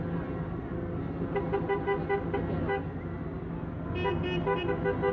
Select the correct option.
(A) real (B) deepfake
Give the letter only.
A